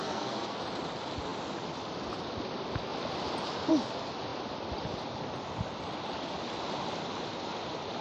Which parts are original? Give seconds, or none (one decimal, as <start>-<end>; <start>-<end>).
0.6-8.0